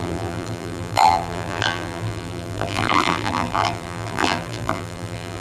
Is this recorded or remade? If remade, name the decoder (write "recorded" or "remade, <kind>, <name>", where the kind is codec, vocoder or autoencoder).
remade, vocoder, BigVGAN v2